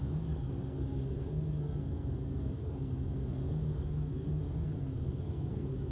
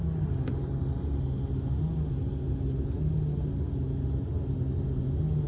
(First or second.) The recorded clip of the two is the second